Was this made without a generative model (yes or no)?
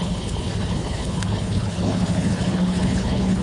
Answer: no